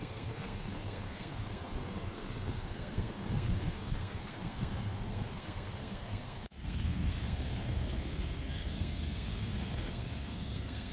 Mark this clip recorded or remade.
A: remade